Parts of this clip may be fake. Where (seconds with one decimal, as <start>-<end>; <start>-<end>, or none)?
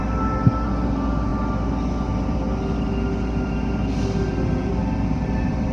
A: none